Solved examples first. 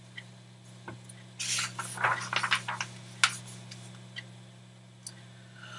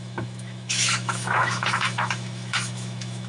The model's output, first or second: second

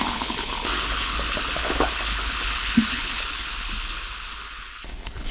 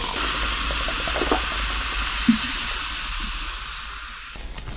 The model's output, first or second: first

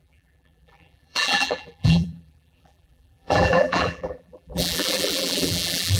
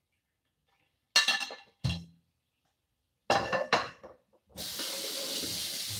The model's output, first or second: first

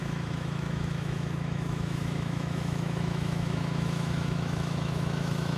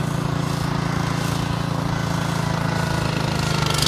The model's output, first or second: first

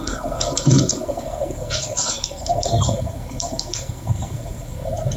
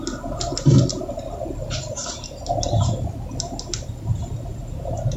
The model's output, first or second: first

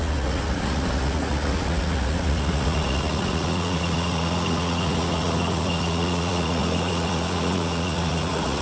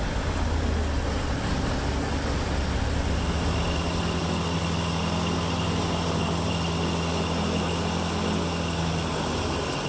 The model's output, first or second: first